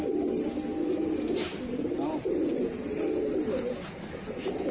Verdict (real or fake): real